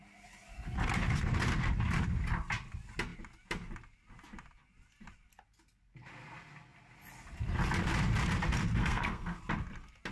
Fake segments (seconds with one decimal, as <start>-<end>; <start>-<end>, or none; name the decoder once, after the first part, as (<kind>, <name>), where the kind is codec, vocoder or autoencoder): 8.8-9.4 (codec, SNAC)